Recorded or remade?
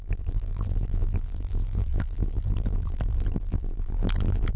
remade